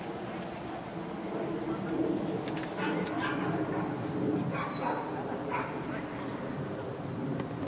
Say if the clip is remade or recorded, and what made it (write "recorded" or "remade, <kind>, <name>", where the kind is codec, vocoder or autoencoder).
recorded